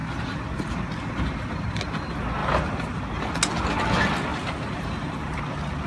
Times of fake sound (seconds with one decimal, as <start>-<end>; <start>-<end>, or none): 2.4-3.0; 4.3-5.4